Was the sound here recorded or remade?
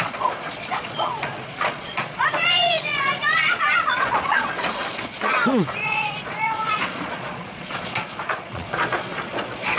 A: remade